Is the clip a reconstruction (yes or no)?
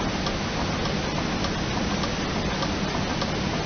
no